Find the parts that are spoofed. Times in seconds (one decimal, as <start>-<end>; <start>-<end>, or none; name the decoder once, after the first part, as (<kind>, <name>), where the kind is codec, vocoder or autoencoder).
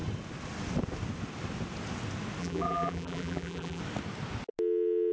2.4-3.8 (vocoder, BigVGAN v2)